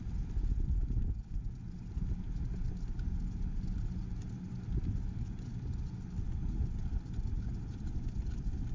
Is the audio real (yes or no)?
yes